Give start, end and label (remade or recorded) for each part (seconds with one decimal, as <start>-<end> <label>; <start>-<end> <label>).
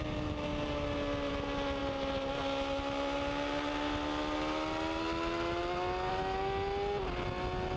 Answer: 0.0-7.8 recorded